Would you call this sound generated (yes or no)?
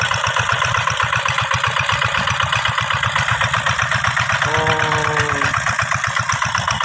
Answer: no